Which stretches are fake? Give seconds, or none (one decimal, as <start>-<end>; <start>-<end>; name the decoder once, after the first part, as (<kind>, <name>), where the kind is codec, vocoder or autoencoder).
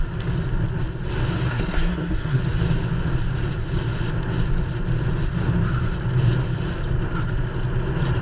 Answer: 1.5-2.4 (codec, SNAC)